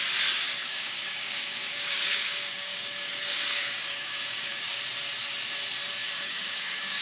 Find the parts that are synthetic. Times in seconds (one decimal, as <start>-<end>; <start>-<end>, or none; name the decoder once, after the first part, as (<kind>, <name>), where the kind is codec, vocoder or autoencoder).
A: 0.6-4.8 (codec, DAC); 6.0-7.0